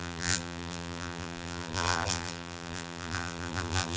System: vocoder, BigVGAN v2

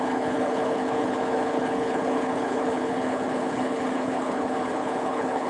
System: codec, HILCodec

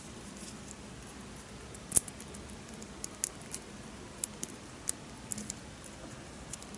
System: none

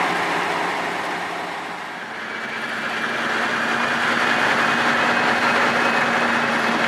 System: none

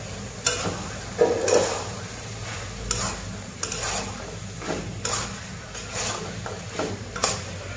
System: none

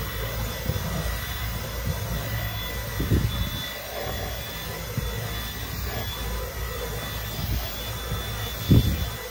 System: none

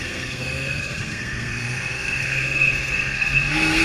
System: codec, SNAC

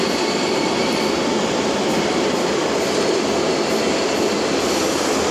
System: none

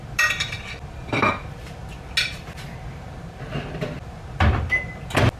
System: none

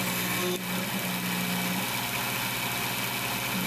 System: none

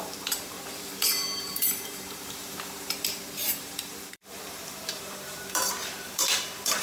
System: vocoder, BigVGAN v2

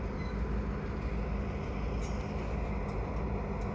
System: none